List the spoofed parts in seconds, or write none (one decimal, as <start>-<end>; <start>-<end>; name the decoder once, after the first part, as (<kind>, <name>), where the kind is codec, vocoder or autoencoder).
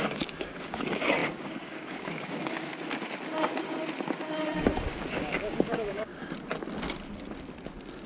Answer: 0.0-2.7 (codec, DAC); 5.1-6.1